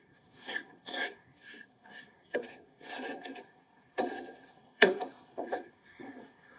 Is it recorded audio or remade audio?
remade